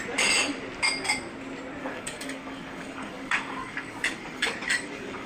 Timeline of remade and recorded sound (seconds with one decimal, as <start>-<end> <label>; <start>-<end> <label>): 0.0-1.8 recorded; 1.8-5.3 remade